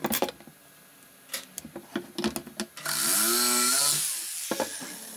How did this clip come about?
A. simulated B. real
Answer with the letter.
B